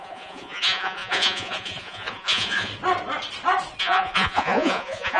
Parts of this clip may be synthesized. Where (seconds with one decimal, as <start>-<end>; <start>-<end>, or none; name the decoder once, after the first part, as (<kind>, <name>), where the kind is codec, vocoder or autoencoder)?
0.0-2.7 (vocoder, Vocos); 3.8-5.2